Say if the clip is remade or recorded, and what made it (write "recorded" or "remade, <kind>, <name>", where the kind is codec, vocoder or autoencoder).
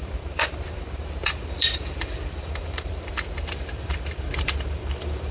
remade, vocoder, BigVGAN v2